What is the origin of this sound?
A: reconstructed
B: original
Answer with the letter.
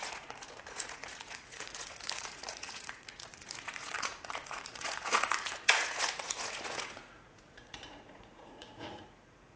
A